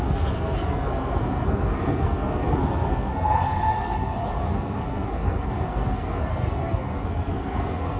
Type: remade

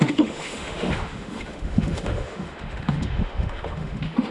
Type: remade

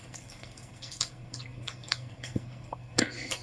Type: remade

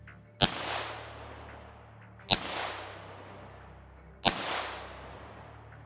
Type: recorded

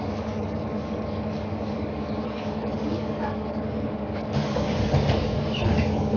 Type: remade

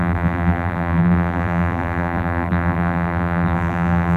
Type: remade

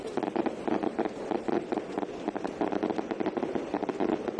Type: recorded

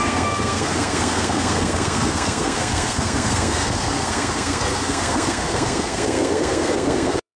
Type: remade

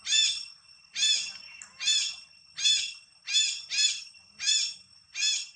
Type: recorded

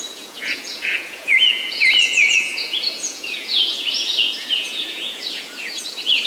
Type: remade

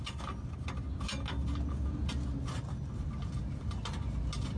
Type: recorded